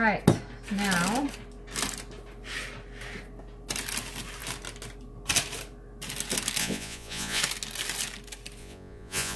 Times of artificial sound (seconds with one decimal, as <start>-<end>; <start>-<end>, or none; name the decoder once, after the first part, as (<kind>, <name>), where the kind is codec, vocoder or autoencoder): 6.6-7.4 (vocoder, Vocos); 8.6-9.4